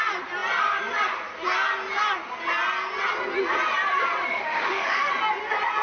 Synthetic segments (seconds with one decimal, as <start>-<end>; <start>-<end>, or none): 4.3-5.1